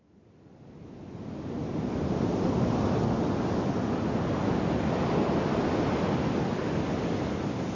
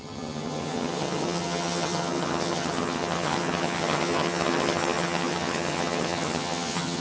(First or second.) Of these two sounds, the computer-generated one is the second